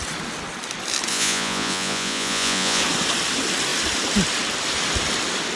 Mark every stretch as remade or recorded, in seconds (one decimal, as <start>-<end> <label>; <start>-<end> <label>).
0.0-1.1 recorded; 1.1-2.8 remade; 2.8-5.6 recorded